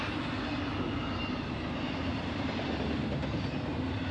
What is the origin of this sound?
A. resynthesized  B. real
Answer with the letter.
B